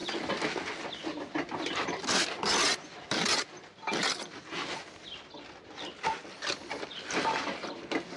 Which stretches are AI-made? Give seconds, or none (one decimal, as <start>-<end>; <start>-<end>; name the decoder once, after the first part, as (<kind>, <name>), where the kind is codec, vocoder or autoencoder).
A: none